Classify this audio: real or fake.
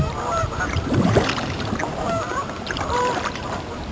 fake